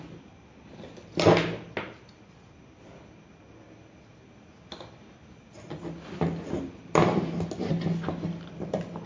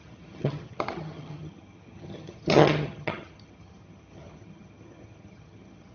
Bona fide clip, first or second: first